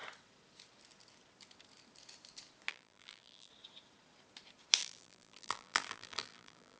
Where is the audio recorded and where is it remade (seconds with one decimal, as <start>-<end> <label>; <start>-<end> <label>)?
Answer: 0.0-2.7 recorded; 2.7-3.5 remade; 3.5-4.8 recorded; 4.8-6.8 remade